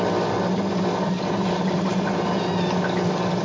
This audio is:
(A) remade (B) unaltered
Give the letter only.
B